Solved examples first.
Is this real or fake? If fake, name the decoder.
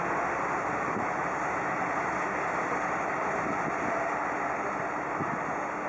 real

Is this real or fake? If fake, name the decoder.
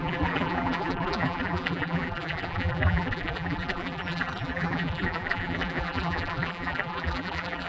fake, vocoder, BigVGAN v2